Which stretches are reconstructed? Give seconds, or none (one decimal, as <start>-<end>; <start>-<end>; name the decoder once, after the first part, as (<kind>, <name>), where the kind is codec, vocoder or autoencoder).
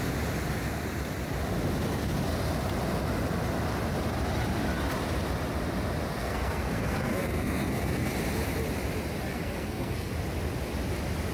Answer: 6.2-8.1 (codec, SNAC); 9.3-10.1